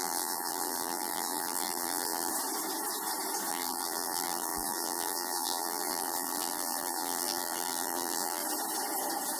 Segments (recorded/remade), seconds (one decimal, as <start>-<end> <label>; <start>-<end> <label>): 0.0-2.3 remade; 2.3-3.5 recorded; 3.5-8.4 remade; 8.4-9.4 recorded